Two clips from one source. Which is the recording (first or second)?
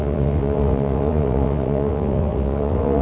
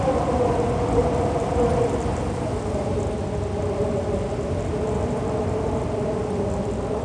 second